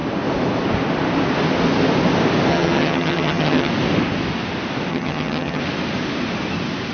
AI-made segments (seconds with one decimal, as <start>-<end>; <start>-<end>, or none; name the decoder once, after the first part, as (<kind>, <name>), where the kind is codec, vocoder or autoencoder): 2.5-3.7 (vocoder, HiFi-GAN); 4.9-5.6